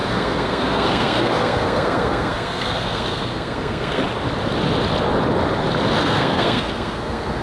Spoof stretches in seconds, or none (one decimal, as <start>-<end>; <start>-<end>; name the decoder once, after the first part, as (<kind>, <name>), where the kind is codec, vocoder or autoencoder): 0.0-4.0 (codec, SNAC); 6.0-7.4